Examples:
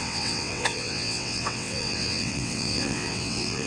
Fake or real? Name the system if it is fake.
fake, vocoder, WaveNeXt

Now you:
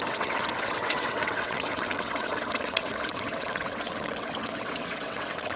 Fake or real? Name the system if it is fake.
fake, vocoder, WaveNeXt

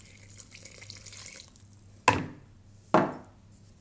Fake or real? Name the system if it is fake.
real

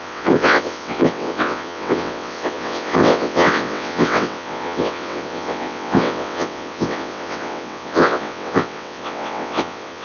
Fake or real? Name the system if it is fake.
fake, vocoder, WaveNeXt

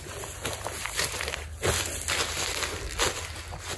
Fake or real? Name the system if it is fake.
real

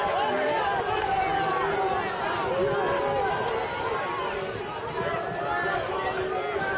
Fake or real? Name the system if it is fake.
real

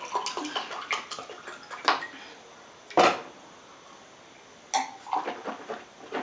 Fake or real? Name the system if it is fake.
real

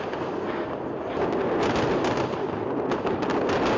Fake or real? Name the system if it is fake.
real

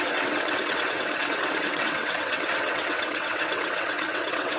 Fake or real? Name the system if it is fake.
fake, vocoder, WaveNeXt